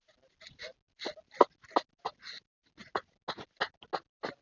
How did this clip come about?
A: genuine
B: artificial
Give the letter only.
A